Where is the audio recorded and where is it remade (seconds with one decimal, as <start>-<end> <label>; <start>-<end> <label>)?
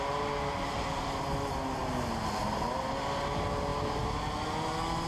0.0-5.1 recorded